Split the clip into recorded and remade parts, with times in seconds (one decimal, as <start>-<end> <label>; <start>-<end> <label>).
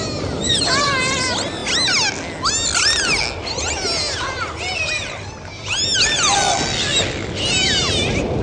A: 0.0-8.4 recorded